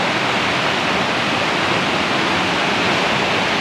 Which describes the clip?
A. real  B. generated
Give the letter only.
A